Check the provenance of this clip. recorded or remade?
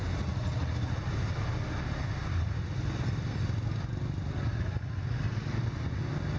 recorded